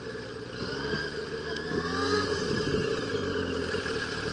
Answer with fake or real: real